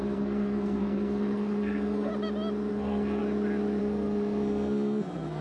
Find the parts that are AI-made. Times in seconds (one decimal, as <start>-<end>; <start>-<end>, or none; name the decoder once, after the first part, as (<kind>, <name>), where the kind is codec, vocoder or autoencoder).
0.0-2.1 (codec, SNAC); 2.7-3.2; 3.8-5.4